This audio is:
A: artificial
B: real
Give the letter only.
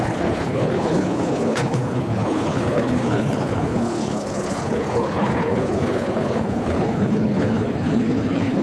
A